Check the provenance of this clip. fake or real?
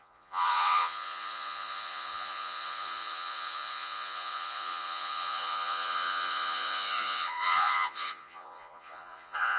fake